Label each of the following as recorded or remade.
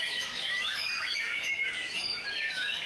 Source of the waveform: remade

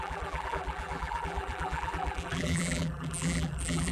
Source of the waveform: remade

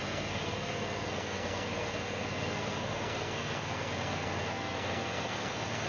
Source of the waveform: remade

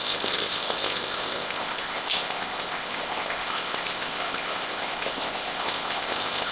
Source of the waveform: remade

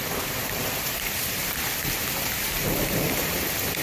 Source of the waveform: remade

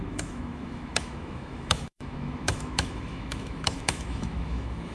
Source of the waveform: remade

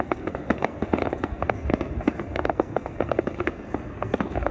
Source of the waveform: remade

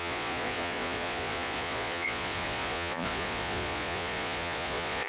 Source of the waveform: remade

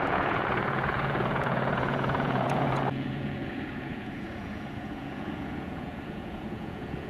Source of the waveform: remade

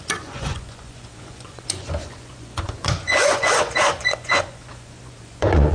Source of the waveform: remade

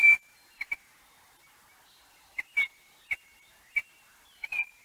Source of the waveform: recorded